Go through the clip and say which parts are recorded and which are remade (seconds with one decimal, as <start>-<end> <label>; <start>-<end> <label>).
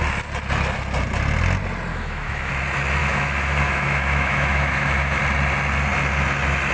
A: 0.0-1.9 recorded; 1.9-2.5 remade; 2.5-3.0 recorded; 3.0-5.2 remade; 5.2-6.7 recorded